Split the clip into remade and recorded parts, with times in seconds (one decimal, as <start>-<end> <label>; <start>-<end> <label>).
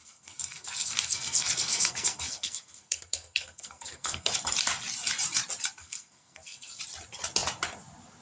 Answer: 0.0-4.3 remade; 4.3-5.8 recorded; 5.8-6.8 remade; 6.8-8.2 recorded